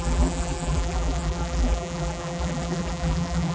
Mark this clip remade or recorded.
remade